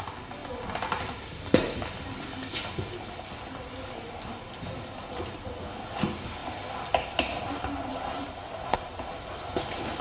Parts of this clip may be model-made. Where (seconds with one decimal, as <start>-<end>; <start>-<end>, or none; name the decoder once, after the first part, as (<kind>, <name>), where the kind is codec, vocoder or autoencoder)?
none